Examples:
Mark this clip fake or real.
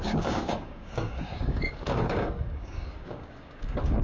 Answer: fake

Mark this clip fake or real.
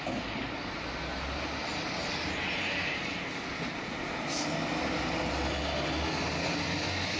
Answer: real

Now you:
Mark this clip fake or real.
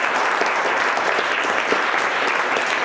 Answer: real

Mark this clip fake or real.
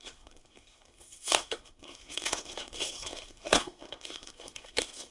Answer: fake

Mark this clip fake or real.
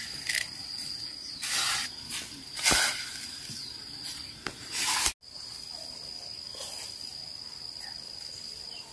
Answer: real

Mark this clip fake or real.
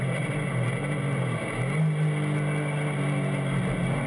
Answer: real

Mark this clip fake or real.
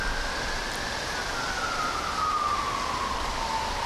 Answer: real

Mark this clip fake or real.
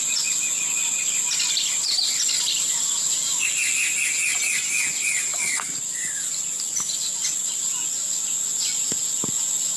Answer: real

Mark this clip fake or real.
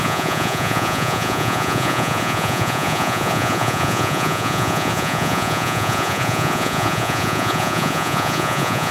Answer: fake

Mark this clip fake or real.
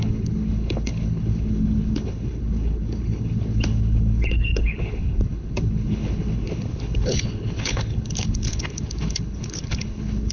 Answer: fake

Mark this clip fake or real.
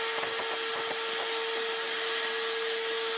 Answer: real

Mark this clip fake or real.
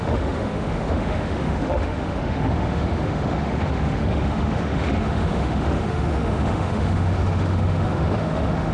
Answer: fake